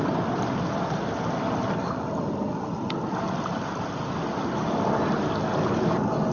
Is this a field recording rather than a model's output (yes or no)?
yes